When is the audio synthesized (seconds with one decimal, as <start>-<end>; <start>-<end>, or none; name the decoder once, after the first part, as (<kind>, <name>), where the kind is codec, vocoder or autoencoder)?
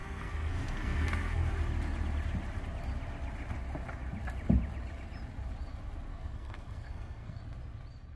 0.0-1.5 (codec, SNAC); 6.1-7.4